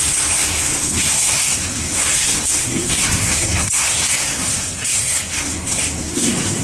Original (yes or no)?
no